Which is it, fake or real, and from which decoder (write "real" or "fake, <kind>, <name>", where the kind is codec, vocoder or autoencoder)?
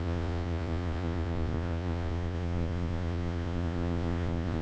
fake, vocoder, Vocos